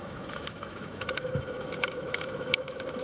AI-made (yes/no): yes